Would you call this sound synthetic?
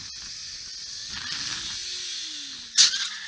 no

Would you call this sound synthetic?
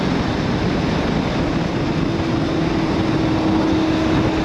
no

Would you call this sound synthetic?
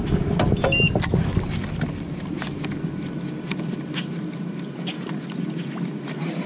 no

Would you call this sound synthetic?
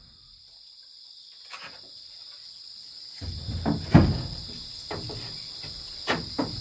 yes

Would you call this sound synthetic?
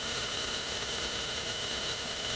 yes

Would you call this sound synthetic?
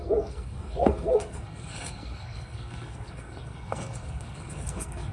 yes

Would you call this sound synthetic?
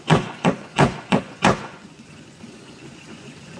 yes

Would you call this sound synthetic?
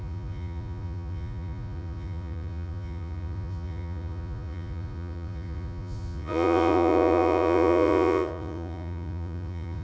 yes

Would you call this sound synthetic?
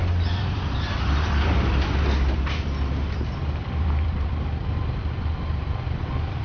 yes